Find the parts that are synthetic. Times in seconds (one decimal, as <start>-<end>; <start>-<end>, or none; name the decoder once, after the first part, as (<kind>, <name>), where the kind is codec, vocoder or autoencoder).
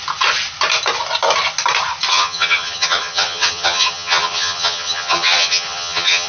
2.1-6.3 (vocoder, HiFi-GAN)